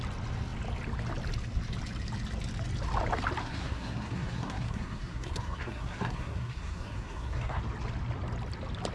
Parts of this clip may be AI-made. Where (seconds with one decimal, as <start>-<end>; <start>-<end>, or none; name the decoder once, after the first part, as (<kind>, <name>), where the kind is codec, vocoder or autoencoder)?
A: 3.4-7.6 (codec, SNAC)